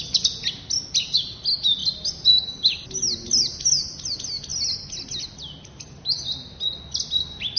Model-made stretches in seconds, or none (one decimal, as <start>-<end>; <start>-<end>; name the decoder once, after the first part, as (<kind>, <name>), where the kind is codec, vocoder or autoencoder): none